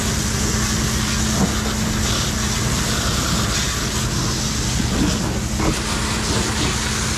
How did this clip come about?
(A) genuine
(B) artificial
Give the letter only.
A